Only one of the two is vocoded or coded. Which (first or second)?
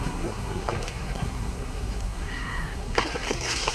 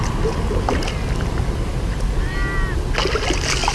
first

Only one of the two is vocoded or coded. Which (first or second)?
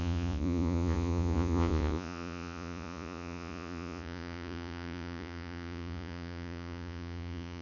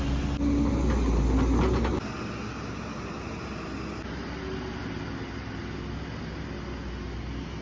first